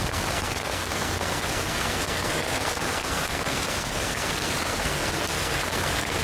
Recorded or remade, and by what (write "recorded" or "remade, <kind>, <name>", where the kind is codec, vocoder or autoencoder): remade, codec, SNAC